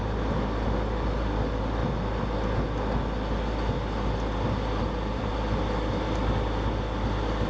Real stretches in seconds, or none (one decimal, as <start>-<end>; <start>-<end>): 0.0-7.5